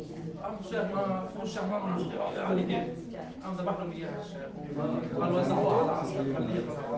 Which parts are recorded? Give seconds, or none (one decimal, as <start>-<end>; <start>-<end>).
0.0-1.7; 2.7-7.0